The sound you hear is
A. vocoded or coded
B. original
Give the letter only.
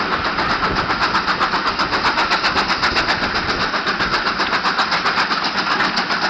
B